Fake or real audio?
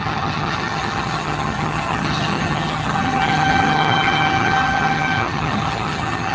fake